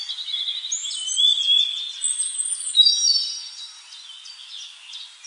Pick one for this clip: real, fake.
real